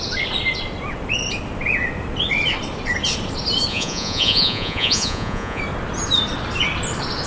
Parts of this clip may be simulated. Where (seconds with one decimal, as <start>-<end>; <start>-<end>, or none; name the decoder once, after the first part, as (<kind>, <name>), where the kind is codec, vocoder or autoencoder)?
3.7-5.6 (vocoder, Vocos)